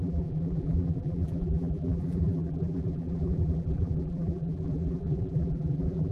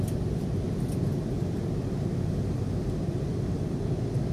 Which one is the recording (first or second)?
second